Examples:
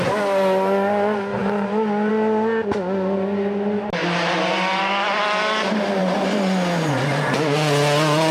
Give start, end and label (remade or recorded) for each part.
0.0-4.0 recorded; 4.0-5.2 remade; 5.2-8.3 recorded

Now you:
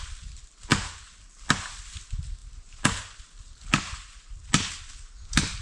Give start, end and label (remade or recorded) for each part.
0.0-5.6 recorded

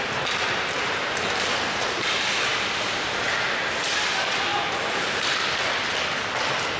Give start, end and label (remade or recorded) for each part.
0.0-4.5 recorded; 4.5-5.6 remade; 5.6-6.8 recorded

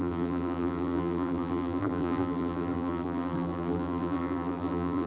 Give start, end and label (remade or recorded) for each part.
0.0-5.1 remade

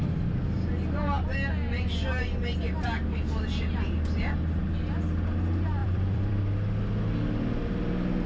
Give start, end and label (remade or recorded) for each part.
0.0-5.8 recorded; 5.8-6.4 remade; 6.4-8.3 recorded